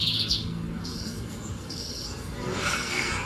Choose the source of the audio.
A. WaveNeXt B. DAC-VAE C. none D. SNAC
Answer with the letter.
D